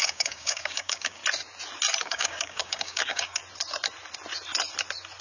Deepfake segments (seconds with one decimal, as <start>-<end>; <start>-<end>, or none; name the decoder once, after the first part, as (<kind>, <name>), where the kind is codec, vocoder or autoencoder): 0.0-1.2 (codec, DAC); 2.0-3.4